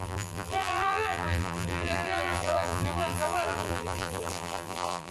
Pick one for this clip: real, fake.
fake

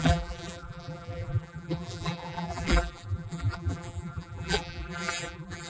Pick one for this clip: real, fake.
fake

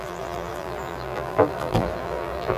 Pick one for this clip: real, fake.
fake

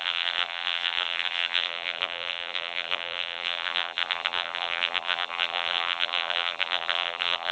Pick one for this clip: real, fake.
fake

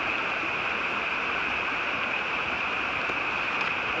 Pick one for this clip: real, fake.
fake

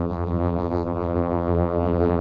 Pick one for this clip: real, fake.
fake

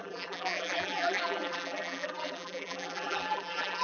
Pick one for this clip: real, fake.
fake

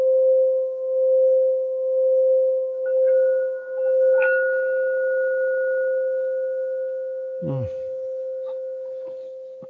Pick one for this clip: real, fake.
real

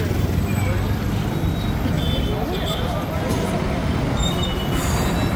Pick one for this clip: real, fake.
real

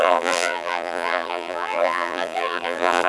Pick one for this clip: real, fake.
fake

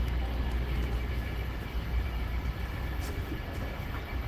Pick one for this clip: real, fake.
real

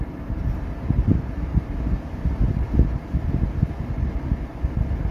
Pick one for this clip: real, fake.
real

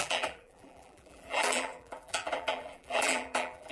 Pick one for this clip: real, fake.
fake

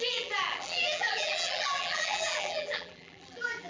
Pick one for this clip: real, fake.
fake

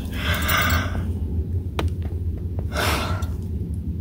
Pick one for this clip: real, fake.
real